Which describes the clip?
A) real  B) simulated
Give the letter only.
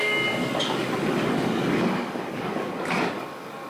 B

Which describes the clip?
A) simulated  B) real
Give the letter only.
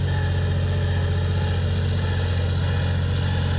B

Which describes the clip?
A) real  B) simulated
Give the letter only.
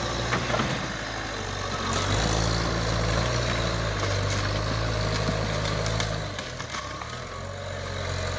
A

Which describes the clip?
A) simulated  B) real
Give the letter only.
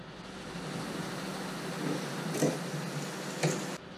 B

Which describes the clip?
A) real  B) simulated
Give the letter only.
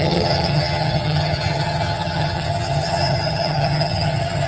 B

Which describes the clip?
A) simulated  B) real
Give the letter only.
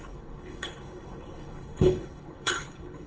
A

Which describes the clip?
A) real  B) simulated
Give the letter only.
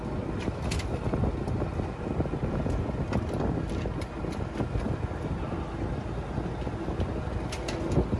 A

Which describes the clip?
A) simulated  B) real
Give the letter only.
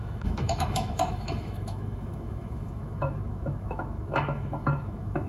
A